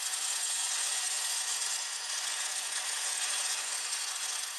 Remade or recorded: remade